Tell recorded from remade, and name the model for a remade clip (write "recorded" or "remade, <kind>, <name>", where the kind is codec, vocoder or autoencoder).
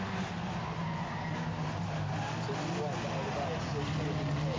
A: recorded